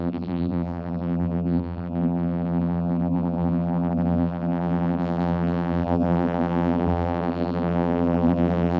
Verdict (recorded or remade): remade